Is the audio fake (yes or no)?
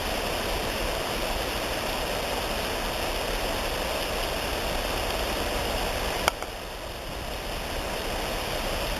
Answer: no